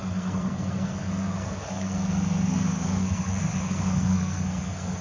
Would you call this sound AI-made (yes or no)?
yes